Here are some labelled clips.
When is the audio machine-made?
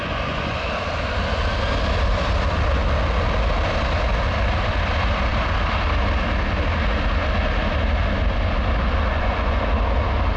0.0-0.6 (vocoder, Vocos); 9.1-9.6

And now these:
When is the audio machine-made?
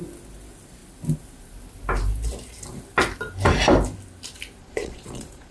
4.6-5.5 (vocoder, Vocos)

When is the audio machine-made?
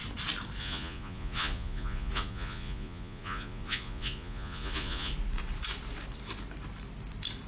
0.6-5.1 (vocoder, Vocos)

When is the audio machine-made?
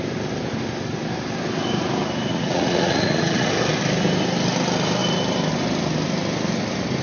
2.3-3.5 (vocoder, Vocos)